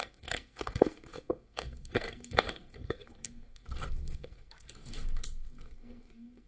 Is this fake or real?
fake